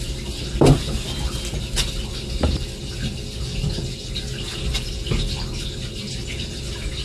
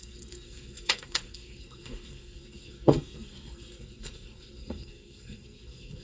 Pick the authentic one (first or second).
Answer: first